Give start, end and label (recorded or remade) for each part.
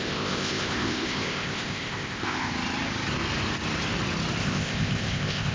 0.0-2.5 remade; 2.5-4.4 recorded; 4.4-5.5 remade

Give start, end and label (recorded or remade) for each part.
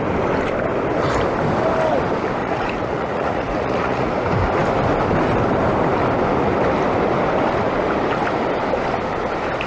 0.0-2.4 recorded; 2.4-4.1 remade; 4.1-9.7 recorded